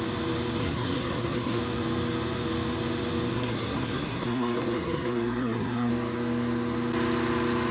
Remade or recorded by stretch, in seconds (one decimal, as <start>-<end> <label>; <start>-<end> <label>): 0.0-0.6 recorded; 0.6-1.6 remade; 1.6-3.3 recorded; 3.3-5.9 remade; 5.9-7.7 recorded